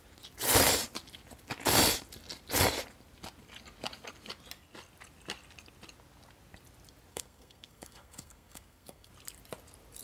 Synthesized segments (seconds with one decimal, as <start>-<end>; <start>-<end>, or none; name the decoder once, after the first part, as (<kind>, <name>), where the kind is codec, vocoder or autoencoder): 7.1-9.1 (codec, SNAC)